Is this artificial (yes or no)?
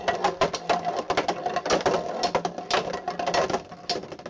no